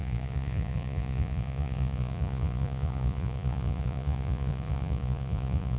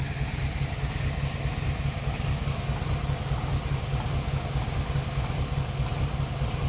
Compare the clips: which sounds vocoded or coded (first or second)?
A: first